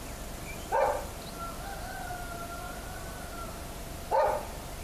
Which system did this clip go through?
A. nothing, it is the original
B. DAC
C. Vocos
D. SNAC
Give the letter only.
A